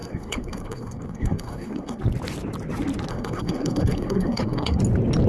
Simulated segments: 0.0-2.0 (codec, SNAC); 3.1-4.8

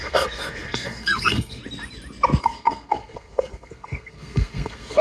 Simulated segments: 0.0-1.6 (codec, SNAC); 2.4-5.0

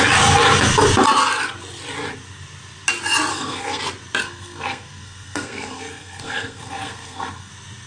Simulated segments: 3.3-3.8 (codec, SNAC); 4.2-7.5

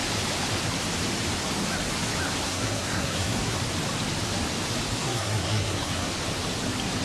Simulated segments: 2.4-3.6 (codec, SNAC); 5.0-6.1